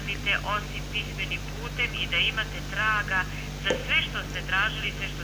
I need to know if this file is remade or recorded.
recorded